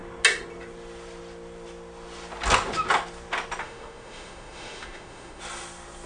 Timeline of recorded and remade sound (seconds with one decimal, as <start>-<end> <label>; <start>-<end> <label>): 0.0-3.6 recorded; 3.6-5.4 remade; 5.4-6.1 recorded